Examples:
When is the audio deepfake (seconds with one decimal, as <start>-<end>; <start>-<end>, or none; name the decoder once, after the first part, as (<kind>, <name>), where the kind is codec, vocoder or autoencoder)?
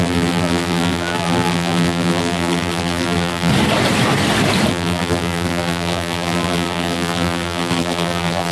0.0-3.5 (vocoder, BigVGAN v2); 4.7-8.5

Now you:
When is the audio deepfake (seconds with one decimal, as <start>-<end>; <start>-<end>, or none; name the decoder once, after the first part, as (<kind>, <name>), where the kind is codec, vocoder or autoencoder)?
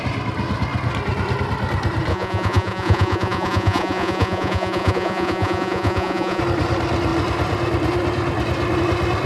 2.1-6.4 (vocoder, Vocos)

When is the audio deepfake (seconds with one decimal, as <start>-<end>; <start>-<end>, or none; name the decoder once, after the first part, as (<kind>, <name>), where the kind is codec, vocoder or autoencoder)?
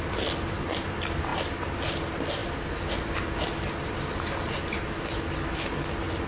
none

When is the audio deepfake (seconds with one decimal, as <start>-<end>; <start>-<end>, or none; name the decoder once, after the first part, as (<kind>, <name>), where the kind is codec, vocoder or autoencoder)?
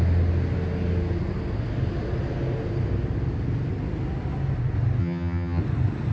5.0-5.6 (vocoder, HiFi-GAN)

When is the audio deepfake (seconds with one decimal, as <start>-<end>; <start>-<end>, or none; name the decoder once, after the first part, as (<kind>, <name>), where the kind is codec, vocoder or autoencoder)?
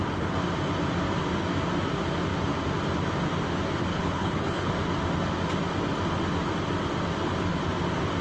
3.9-4.7 (codec, HILCodec)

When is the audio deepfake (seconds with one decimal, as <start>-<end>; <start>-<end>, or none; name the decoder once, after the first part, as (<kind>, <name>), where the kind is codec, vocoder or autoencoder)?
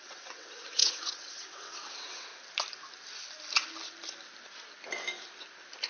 0.0-2.3 (vocoder, WaveNeXt)